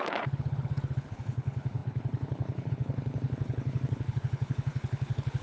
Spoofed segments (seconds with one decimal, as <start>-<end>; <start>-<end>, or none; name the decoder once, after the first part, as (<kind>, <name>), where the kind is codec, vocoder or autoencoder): 0.0-5.4 (codec, HILCodec)